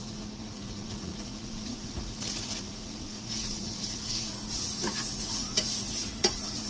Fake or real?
fake